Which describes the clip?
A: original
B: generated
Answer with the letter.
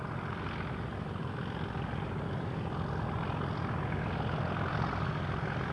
A